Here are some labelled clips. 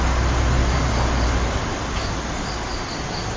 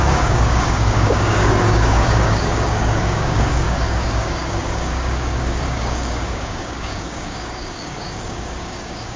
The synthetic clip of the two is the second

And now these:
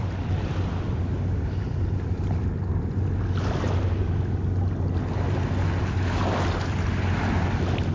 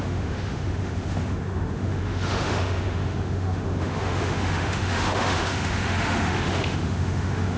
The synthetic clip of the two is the second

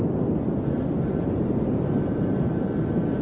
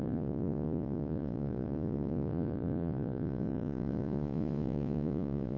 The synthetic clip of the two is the second